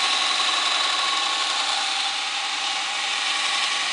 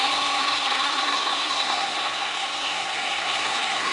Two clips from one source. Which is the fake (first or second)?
second